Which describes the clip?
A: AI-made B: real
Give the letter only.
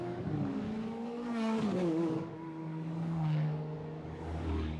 A